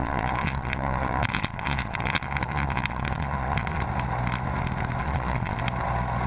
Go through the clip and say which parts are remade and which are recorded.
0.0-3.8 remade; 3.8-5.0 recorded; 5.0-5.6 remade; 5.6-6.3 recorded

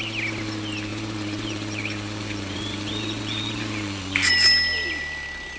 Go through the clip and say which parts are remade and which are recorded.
0.0-0.9 recorded; 0.9-4.3 remade; 4.3-5.6 recorded

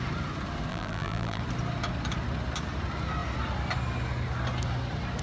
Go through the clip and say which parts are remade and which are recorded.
0.0-0.7 recorded; 0.7-1.4 remade; 1.4-5.2 recorded

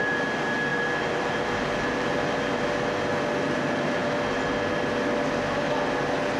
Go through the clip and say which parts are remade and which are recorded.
0.0-0.7 recorded; 0.7-2.4 remade; 2.4-6.4 recorded

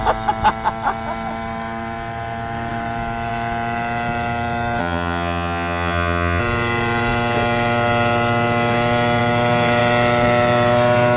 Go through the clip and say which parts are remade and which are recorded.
0.0-4.8 recorded; 4.8-6.4 remade; 6.4-11.2 recorded

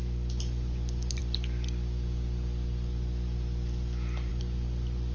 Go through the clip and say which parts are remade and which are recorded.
0.0-5.1 recorded

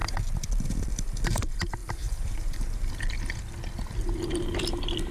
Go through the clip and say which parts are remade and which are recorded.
0.0-1.8 recorded; 1.8-2.9 remade; 2.9-5.1 recorded